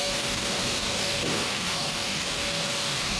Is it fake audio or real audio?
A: fake